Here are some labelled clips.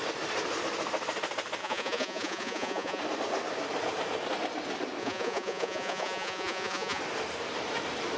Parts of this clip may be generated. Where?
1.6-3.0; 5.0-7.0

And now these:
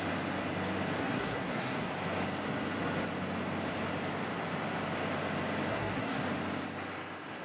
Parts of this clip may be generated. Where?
1.0-1.9; 5.7-6.2

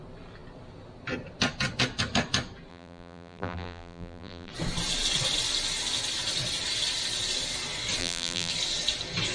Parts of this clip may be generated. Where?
2.7-4.5; 8.0-8.5